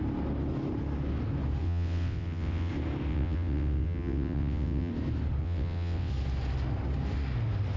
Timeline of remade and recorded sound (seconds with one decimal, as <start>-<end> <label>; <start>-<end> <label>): 0.0-1.6 recorded; 1.6-2.7 remade; 2.7-3.1 recorded; 3.1-4.9 remade; 4.9-5.4 recorded; 5.4-6.1 remade; 6.1-7.8 recorded